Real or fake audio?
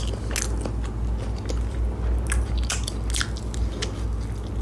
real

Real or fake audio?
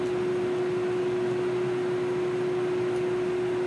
real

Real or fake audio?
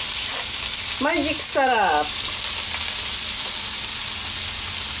real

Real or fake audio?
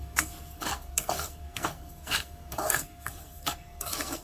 fake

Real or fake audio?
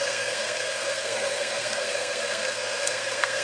fake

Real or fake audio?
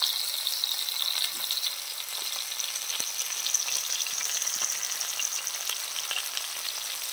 real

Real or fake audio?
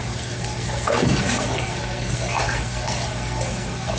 fake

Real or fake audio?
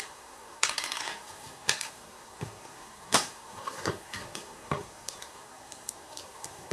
fake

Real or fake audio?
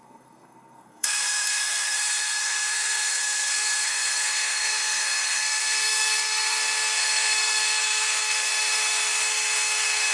fake